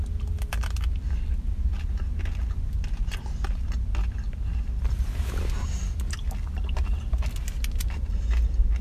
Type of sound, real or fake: real